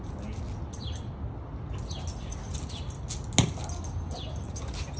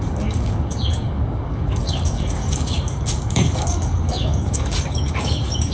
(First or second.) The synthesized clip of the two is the second